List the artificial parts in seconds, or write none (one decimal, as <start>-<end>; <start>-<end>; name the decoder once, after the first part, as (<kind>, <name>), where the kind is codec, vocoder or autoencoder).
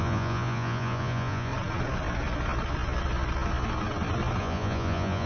0.0-1.5 (vocoder, Vocos); 4.4-5.3